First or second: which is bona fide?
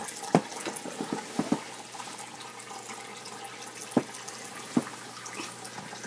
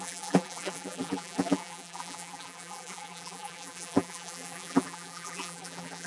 first